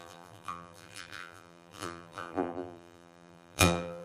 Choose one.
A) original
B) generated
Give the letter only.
B